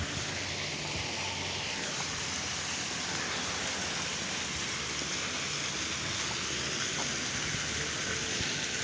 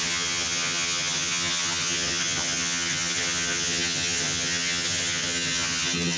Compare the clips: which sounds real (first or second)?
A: first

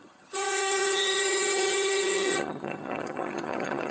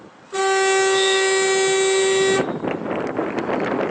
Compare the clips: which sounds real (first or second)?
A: second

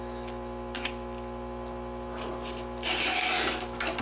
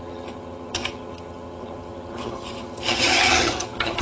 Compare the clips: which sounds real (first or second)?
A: first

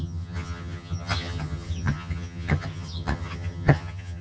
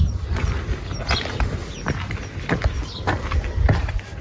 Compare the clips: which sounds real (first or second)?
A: second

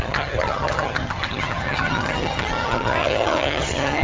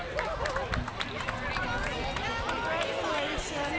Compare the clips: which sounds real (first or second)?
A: second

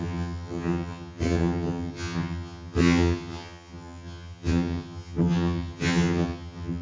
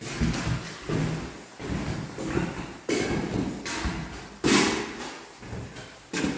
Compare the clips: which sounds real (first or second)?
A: second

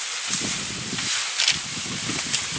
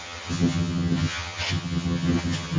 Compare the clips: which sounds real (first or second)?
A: first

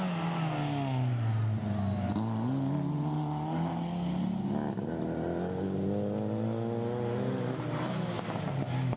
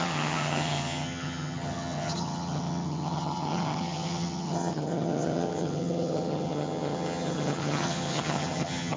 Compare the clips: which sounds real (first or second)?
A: first